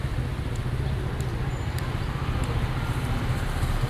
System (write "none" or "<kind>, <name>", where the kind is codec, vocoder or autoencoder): none